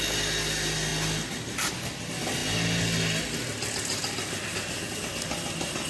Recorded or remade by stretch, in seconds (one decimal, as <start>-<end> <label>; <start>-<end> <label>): 0.0-5.9 recorded